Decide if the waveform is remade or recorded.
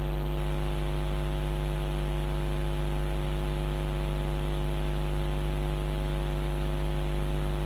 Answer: recorded